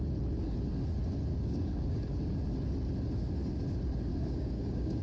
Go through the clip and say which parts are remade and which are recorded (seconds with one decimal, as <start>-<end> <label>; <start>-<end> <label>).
0.0-1.3 recorded; 1.3-2.2 remade; 2.2-4.1 recorded; 4.1-5.0 remade

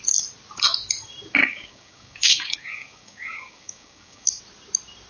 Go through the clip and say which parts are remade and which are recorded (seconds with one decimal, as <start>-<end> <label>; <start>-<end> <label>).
0.0-1.4 recorded; 1.4-4.4 remade; 4.4-5.1 recorded

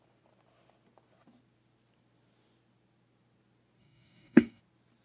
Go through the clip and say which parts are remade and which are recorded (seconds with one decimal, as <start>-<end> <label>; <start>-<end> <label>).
0.0-3.8 recorded; 3.8-4.6 remade; 4.6-5.0 recorded

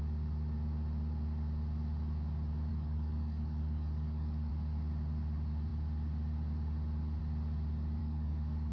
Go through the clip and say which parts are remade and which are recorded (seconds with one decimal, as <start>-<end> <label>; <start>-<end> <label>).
0.0-2.7 recorded; 2.7-4.5 remade; 4.5-8.0 recorded; 8.0-8.7 remade

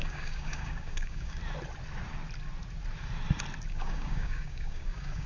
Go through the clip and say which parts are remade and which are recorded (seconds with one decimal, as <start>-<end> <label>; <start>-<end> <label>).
0.0-1.4 remade; 1.4-3.7 recorded; 3.7-5.3 remade